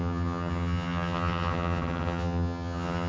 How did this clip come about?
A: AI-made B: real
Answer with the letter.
A